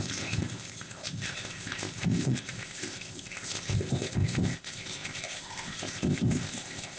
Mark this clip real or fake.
fake